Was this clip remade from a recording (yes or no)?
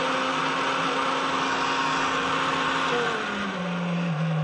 no